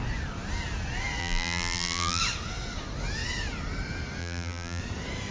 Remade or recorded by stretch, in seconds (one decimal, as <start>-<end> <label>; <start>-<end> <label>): 0.0-1.2 recorded; 1.2-2.2 remade; 2.2-4.2 recorded; 4.2-4.8 remade; 4.8-5.3 recorded